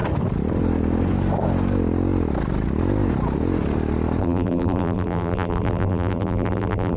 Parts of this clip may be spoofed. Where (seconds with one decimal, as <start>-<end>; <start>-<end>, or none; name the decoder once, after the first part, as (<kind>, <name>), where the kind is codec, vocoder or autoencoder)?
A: 4.2-7.0 (vocoder, BigVGAN v2)